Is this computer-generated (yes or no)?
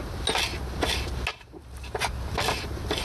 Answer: no